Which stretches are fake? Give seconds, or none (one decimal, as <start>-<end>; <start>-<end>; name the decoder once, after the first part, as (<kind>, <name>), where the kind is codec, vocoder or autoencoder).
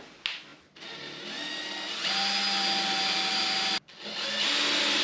none